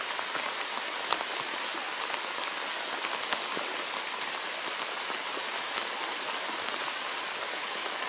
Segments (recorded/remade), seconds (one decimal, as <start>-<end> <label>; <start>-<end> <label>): 0.0-7.3 recorded; 7.3-8.1 remade